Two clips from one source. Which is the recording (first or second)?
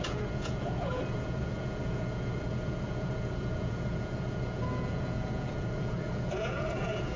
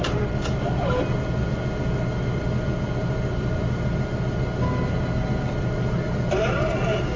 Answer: second